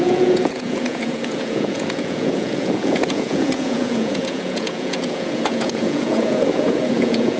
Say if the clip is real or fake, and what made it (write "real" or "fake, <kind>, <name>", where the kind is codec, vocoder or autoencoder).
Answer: fake, vocoder, Vocos